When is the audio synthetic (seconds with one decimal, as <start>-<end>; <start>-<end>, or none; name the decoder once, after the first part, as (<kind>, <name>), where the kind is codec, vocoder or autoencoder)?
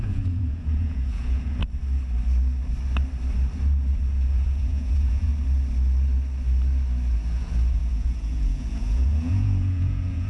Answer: 0.0-1.6 (vocoder, Vocos); 4.3-5.3; 7.3-10.3